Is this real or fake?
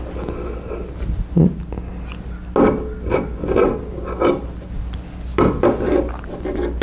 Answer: real